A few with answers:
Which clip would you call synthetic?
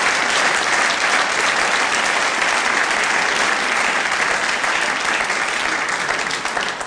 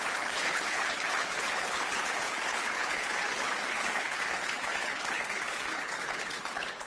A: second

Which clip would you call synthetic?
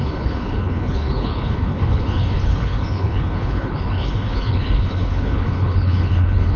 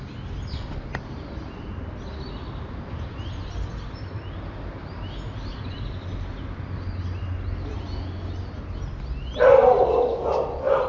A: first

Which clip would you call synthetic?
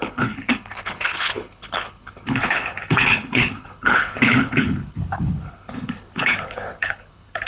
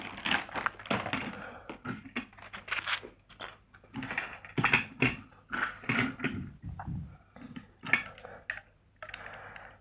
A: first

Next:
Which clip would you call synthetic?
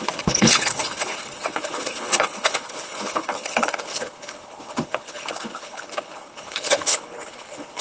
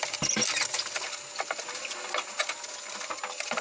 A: first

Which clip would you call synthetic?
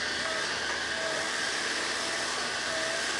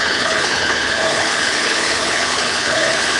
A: second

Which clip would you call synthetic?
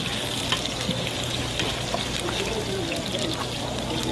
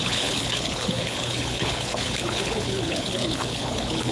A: second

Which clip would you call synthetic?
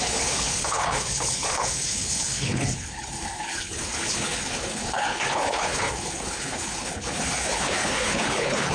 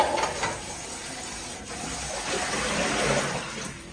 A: first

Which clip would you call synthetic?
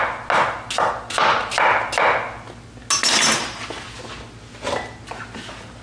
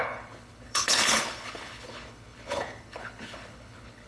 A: second